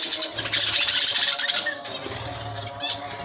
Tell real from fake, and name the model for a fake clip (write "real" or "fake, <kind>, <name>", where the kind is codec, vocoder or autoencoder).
real